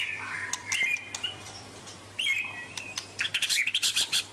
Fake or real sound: fake